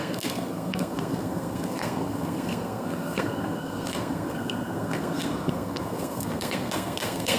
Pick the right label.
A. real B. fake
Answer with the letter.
B